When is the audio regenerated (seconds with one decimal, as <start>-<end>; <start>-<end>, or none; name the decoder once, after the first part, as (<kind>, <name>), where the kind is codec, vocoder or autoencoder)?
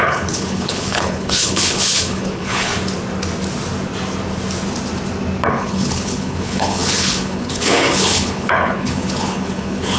0.0-2.7 (codec, HILCodec); 5.5-10.0